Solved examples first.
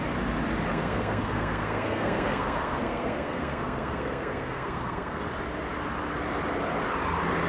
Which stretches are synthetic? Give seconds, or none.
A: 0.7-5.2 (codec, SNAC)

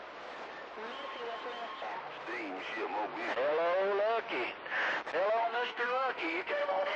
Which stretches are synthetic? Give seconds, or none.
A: 5.4-7.0 (autoencoder, DAC-VAE)

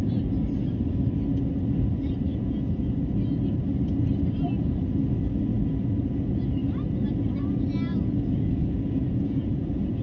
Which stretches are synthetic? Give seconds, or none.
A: 2.3-3.0 (vocoder, Vocos); 7.9-10.0

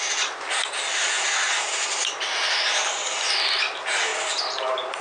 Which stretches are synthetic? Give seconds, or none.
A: none

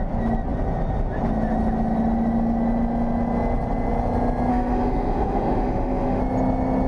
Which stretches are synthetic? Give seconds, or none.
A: 4.5-6.2 (autoencoder, DAC-VAE)

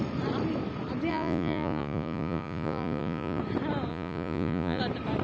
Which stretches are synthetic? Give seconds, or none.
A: 1.1-3.4 (vocoder, Vocos); 3.9-4.8